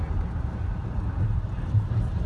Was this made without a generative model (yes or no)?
yes